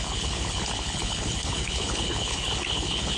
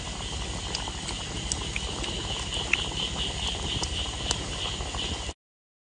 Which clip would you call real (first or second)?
second